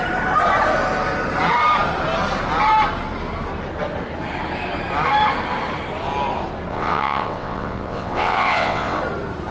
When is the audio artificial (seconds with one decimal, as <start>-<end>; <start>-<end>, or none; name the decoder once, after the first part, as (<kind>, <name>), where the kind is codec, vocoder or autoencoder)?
6.7-9.0 (vocoder, WaveNeXt)